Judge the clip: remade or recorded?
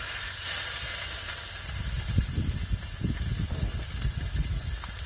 recorded